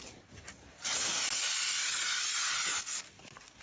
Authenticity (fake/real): real